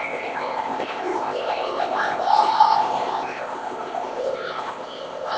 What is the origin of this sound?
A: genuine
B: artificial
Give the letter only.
B